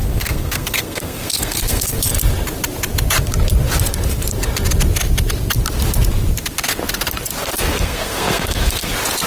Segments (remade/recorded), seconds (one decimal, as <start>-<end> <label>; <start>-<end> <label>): 0.0-2.0 remade; 2.0-7.4 recorded; 7.4-8.9 remade; 8.9-9.3 recorded